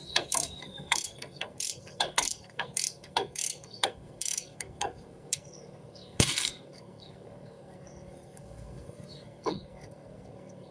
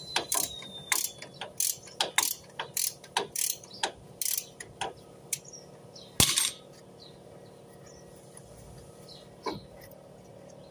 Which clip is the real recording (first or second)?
second